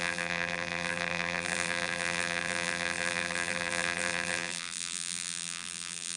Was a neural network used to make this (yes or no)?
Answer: yes